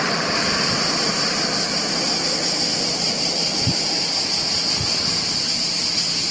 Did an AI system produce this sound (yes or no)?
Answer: no